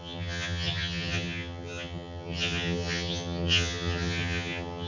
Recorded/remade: remade